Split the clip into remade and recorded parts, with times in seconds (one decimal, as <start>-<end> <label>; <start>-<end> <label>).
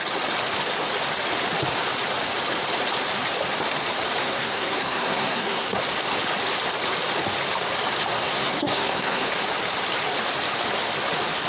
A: 0.0-4.2 recorded; 4.2-5.8 remade; 5.8-8.1 recorded; 8.1-9.3 remade; 9.3-11.5 recorded